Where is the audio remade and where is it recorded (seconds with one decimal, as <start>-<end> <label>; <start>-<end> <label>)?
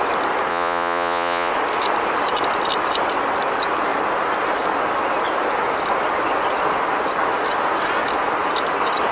0.0-0.5 recorded; 0.5-1.5 remade; 1.5-9.1 recorded